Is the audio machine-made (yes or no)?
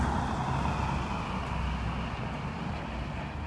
no